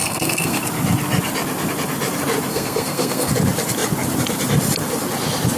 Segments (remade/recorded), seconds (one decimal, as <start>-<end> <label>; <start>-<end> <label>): 0.0-0.6 remade; 0.6-2.5 recorded; 2.5-3.3 remade; 3.3-5.6 recorded